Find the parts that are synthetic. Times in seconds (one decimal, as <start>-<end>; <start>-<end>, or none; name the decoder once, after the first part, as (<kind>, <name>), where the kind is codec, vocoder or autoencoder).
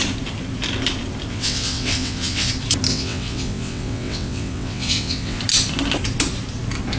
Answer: 1.3-2.5 (vocoder, WaveNeXt); 2.9-5.4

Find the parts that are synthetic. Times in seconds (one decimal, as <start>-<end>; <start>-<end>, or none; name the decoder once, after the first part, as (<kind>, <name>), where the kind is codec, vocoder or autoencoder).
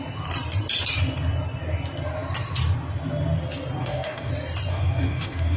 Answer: 3.8-4.3 (codec, DAC); 4.7-5.6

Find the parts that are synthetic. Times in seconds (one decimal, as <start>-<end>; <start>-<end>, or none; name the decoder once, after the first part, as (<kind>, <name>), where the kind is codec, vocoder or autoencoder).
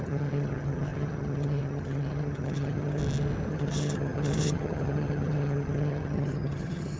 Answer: 0.0-3.0 (vocoder, HiFi-GAN); 3.5-7.0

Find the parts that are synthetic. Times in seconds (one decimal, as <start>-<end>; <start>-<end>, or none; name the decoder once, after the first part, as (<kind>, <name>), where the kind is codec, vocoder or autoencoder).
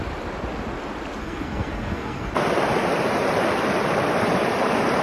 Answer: 1.2-2.3 (codec, SNAC)